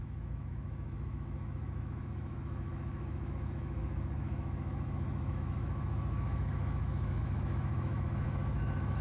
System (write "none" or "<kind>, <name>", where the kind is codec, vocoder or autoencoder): autoencoder, DAC-VAE